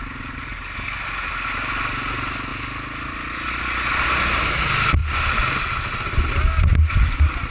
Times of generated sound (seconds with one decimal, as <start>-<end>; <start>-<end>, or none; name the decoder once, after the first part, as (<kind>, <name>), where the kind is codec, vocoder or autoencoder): none